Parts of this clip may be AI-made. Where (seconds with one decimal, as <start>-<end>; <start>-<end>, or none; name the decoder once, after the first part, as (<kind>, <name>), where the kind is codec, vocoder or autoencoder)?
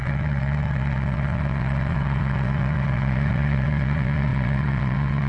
0.0-5.3 (vocoder, WaveNeXt)